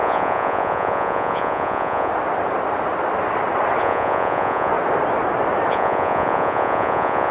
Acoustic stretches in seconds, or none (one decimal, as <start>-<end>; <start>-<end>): 2.1-3.8; 4.7-5.7